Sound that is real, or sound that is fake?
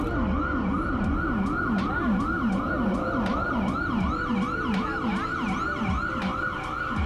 real